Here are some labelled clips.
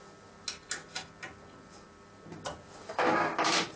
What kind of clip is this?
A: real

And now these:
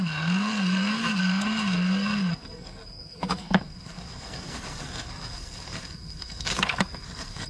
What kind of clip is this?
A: fake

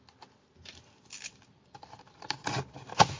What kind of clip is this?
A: real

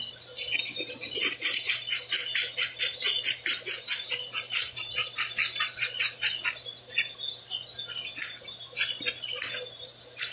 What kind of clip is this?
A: real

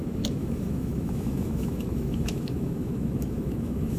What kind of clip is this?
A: fake